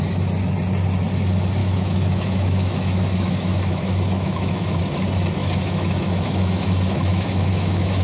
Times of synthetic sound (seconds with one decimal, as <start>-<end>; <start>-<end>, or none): 1.6-4.8; 5.4-8.0